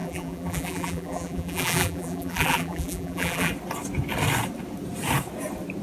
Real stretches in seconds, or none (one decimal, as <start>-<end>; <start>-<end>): 3.5-5.8